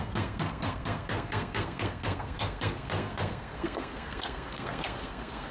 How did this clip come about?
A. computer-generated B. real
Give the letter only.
A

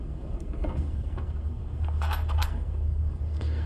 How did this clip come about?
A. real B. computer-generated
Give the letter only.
B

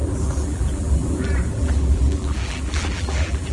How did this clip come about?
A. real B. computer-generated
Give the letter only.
B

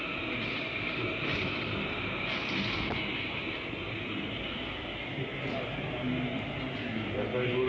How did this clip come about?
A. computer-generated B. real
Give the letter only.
B